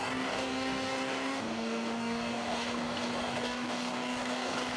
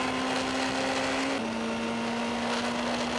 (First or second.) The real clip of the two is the second